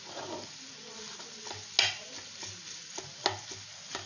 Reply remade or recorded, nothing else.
recorded